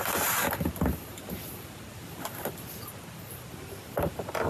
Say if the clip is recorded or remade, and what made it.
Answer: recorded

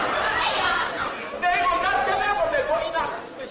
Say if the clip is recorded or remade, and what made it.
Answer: recorded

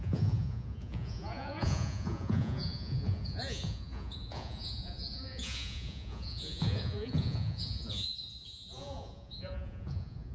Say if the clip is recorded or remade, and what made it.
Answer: remade, vocoder, Vocos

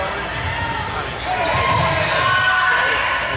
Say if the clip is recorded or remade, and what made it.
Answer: recorded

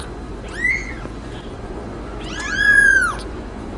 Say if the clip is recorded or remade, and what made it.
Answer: remade, vocoder, Vocos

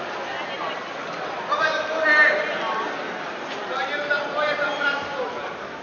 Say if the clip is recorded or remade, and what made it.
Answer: recorded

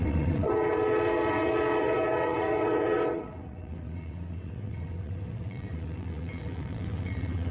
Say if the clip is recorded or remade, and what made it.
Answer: remade, vocoder, WaveNeXt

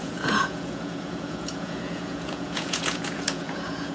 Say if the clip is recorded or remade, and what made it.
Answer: remade, vocoder, Vocos